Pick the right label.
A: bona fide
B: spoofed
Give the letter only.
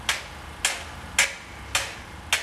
A